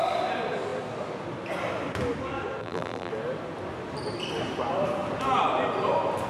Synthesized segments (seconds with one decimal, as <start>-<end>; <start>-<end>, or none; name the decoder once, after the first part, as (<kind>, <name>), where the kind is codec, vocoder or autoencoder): 2.6-3.1 (vocoder, BigVGAN v2)